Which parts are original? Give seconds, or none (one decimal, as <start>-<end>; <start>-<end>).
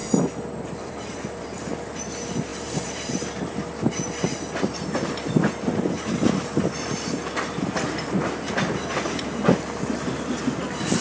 none